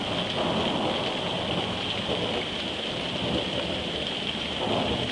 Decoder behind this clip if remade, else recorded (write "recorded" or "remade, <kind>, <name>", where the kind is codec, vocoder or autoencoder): recorded